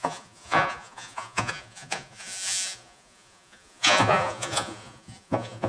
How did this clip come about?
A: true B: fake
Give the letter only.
B